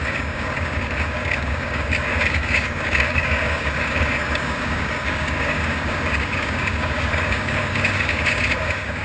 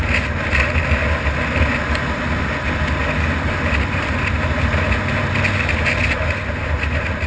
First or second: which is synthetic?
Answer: first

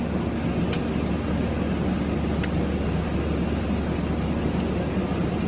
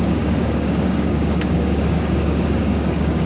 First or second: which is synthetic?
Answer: second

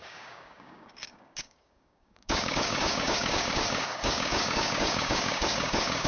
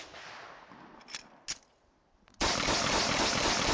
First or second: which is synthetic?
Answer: first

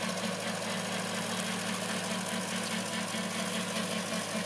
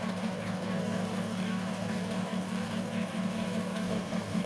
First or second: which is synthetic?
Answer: second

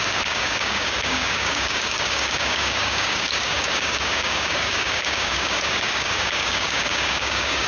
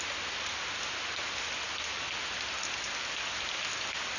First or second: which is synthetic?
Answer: first